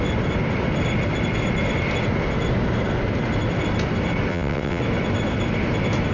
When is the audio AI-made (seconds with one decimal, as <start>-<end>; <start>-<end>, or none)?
4.3-4.8